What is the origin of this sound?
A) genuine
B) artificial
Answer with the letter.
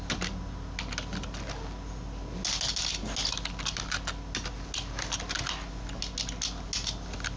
A